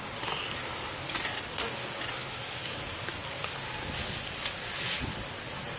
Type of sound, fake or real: real